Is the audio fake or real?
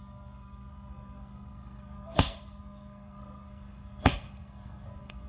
fake